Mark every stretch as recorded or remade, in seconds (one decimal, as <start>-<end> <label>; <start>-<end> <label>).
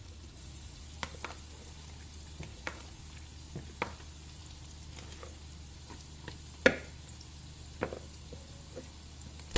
0.0-0.8 remade; 0.8-2.5 recorded; 2.5-3.0 remade; 3.0-9.6 recorded